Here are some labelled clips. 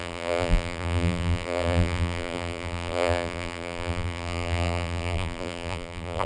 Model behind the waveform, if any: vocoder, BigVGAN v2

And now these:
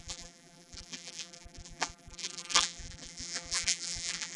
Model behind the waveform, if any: vocoder, BigVGAN v2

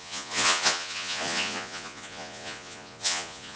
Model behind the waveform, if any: vocoder, Vocos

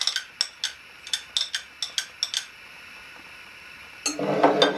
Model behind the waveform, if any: none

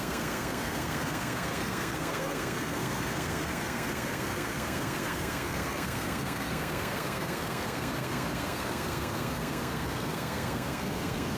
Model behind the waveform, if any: codec, SNAC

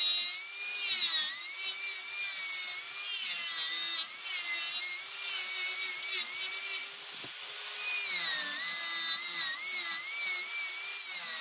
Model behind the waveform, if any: none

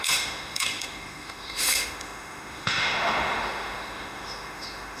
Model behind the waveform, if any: autoencoder, DAC-VAE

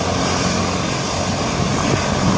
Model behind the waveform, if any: none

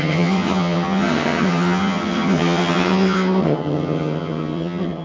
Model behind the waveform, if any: vocoder, HiFi-GAN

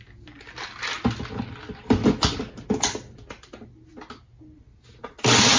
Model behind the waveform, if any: none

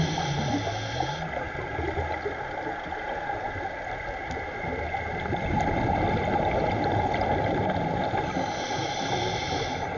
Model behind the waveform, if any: none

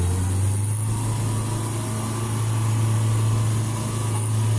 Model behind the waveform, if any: none